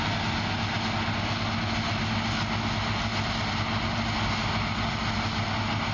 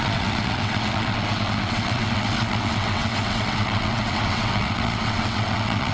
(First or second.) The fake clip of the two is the second